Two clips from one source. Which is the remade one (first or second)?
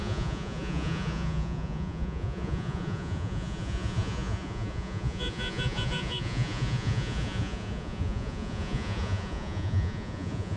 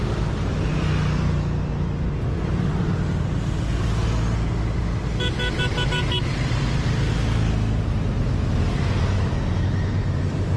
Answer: first